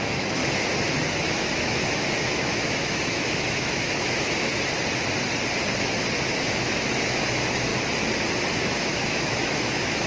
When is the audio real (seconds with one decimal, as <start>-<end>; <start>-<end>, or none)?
0.4-1.1; 4.5-6.3; 7.7-8.5